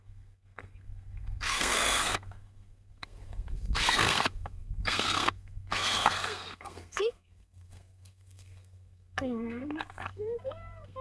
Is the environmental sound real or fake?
fake